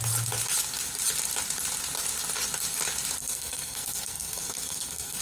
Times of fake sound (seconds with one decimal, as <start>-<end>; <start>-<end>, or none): 3.2-5.2

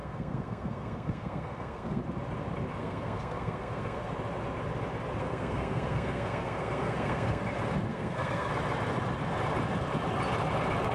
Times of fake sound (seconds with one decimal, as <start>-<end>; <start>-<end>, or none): 0.0-2.0; 2.8-4.1; 5.2-7.4; 7.9-8.5